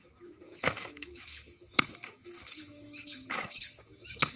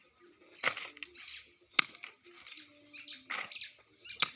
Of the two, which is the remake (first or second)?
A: first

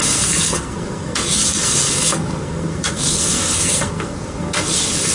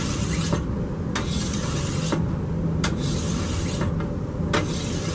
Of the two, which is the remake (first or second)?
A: first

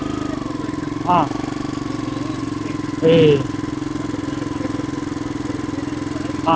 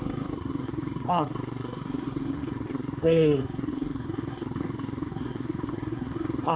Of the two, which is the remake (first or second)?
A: second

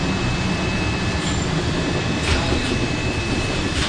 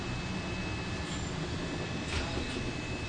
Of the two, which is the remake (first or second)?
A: first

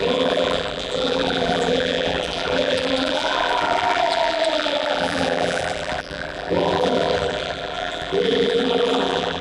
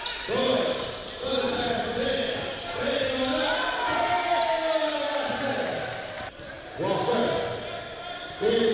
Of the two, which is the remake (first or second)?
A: first